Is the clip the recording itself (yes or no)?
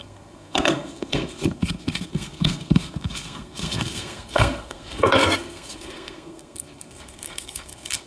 no